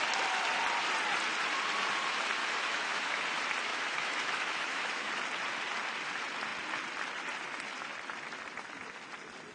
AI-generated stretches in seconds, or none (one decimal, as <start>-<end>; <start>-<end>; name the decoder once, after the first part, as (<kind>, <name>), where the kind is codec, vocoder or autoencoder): 2.4-3.2 (autoencoder, DAC-VAE); 3.7-5.1